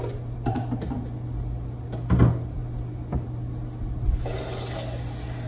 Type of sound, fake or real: real